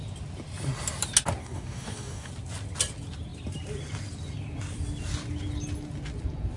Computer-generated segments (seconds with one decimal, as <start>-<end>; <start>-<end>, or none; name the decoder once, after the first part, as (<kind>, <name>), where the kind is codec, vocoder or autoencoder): 1.4-2.3 (codec, DAC)